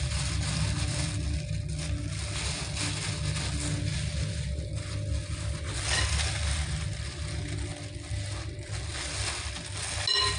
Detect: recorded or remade recorded